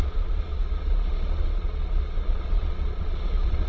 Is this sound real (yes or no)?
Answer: no